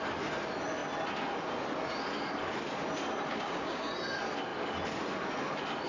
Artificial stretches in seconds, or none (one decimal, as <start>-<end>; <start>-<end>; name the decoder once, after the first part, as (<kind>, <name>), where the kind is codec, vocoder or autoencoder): 3.3-3.9 (codec, DAC)